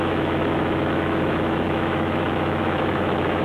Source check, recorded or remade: remade